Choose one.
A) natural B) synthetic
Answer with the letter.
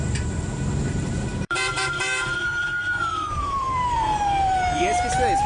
B